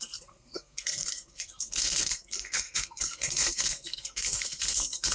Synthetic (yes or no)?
yes